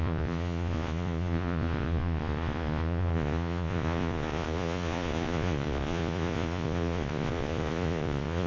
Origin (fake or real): fake